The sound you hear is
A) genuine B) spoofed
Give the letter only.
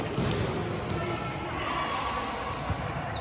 A